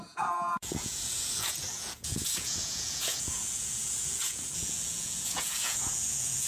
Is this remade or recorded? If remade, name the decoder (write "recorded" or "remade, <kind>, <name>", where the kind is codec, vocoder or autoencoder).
remade, vocoder, Vocos